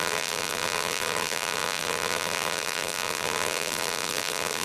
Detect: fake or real fake